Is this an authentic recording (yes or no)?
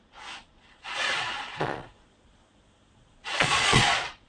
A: no